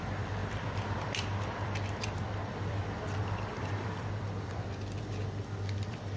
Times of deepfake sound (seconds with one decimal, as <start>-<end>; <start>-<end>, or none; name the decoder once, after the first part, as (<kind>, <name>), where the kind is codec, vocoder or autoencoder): 0.0-6.2 (vocoder, BigVGAN v2)